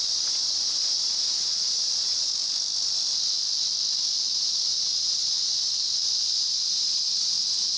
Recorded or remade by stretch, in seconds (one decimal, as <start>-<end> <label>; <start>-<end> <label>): 0.0-2.3 remade; 2.3-4.3 recorded; 4.3-7.8 remade